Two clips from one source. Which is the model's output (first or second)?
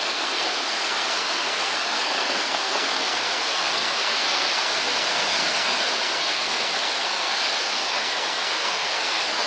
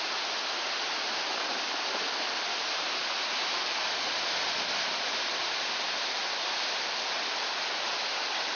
first